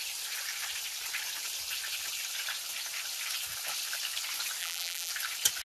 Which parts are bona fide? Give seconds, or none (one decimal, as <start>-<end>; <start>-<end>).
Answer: 0.0-4.6; 5.1-5.7